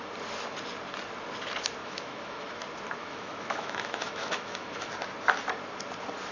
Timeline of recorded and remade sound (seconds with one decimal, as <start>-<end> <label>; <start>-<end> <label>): 0.0-1.8 recorded; 1.8-2.6 remade; 2.6-3.0 recorded; 3.0-4.9 remade; 4.9-6.3 recorded